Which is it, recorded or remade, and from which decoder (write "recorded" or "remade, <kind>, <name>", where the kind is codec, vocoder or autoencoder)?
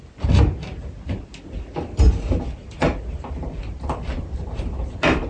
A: recorded